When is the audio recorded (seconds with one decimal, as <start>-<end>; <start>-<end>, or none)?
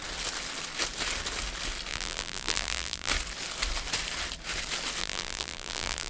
0.0-1.9; 3.1-5.0